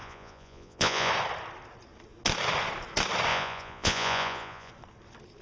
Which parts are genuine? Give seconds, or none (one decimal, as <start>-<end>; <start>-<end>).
1.1-3.3; 4.7-5.4